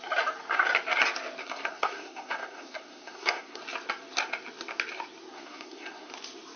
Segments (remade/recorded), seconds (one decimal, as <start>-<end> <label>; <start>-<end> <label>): 0.0-1.4 recorded; 1.4-3.6 remade; 3.6-5.3 recorded; 5.3-6.1 remade; 6.1-6.6 recorded